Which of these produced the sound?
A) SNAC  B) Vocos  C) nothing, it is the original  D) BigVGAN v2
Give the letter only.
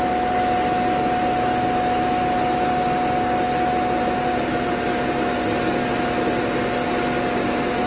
C